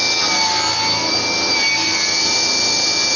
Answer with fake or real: real